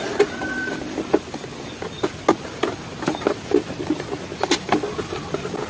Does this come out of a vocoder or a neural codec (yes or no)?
no